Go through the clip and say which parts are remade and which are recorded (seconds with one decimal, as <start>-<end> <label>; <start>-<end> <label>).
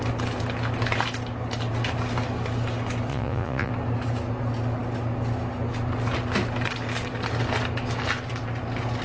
0.0-3.1 recorded; 3.1-3.7 remade; 3.7-9.0 recorded